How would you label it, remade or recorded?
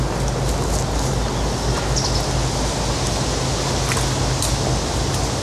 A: recorded